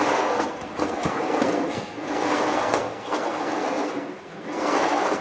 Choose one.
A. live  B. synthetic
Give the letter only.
B